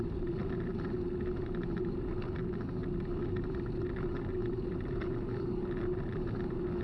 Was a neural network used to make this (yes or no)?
no